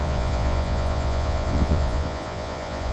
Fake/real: fake